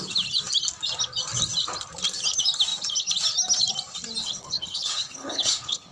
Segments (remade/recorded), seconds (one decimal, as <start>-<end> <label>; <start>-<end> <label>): 0.0-4.2 recorded; 4.2-5.9 remade